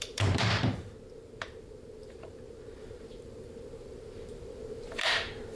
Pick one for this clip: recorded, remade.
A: remade